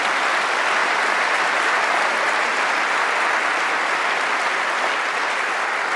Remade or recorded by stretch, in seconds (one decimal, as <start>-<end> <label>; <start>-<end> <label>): 0.0-6.0 recorded